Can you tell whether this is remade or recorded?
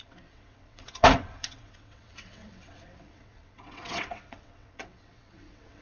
remade